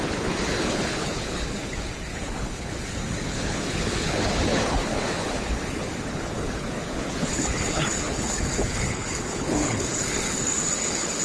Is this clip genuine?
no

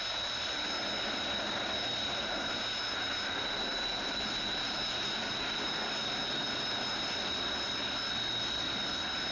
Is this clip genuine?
yes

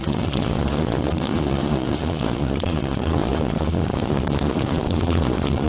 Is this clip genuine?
no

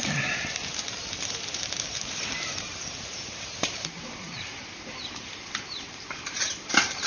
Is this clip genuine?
no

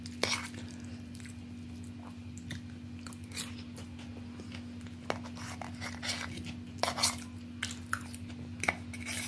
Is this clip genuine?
yes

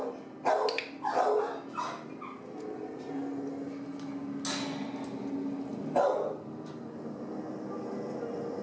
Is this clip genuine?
yes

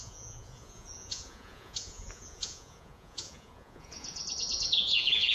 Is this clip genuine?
no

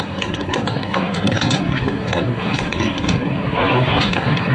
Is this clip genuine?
no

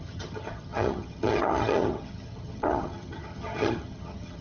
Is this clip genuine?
no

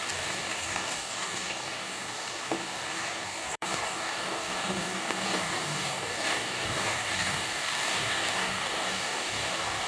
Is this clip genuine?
no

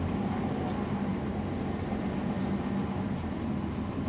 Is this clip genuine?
yes